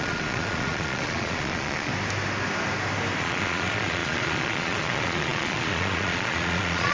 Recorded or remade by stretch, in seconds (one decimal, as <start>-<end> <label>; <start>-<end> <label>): 0.0-1.9 remade; 1.9-3.2 recorded; 3.2-6.9 remade